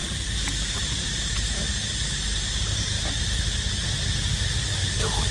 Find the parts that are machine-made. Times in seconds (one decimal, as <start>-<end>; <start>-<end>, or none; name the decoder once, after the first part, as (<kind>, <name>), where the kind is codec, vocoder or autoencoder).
0.0-3.2 (vocoder, BigVGAN v2)